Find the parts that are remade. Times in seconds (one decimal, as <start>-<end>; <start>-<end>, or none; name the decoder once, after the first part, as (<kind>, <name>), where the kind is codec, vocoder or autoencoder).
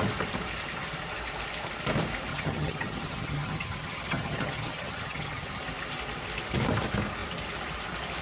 2.3-5.6 (vocoder, HiFi-GAN)